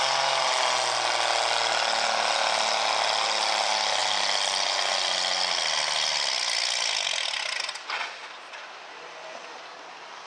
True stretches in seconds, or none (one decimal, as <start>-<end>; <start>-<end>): 0.0-10.3